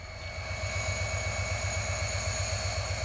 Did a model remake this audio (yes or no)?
no